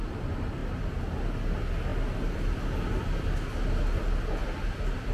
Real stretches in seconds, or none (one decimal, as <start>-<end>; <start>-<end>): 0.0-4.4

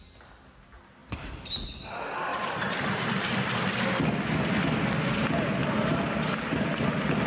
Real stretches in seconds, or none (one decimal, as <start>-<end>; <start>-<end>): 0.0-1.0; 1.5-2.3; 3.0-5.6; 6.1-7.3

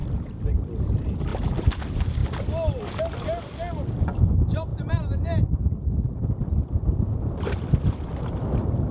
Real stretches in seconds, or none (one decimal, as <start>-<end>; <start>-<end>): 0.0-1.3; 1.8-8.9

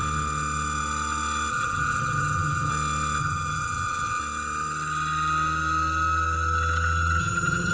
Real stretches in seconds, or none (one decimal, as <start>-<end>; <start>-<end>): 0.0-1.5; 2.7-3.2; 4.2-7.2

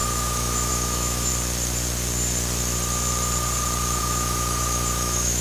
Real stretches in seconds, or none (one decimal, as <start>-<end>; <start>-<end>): 1.3-4.0

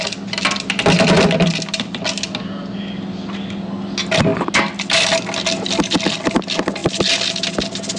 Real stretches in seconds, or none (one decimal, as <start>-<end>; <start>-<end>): 0.0-8.0